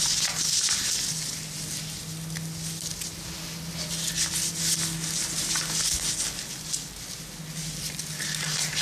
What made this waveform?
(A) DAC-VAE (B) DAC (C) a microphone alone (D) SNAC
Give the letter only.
C